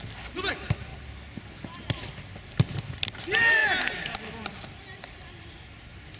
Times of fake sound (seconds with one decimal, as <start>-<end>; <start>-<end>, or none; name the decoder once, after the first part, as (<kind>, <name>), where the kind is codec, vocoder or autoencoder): none